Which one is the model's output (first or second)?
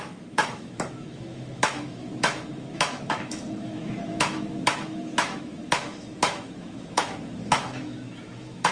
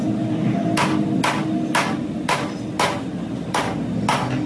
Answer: first